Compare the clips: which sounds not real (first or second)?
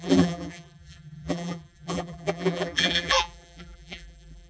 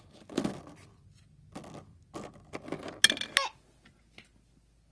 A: first